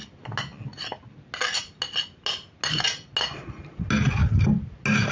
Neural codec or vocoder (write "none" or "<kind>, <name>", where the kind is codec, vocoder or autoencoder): none